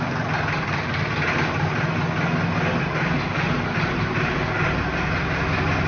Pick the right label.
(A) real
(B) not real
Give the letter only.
A